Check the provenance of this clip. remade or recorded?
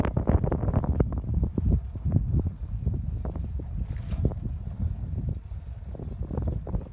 recorded